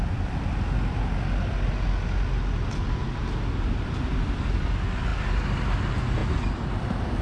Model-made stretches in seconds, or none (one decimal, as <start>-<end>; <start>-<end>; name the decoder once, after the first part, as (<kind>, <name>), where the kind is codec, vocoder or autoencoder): none